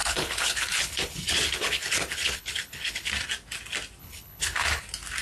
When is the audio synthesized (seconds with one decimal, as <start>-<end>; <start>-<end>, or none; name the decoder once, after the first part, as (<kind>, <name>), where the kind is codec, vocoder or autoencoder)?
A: 0.0-3.1 (codec, HILCodec); 4.0-4.8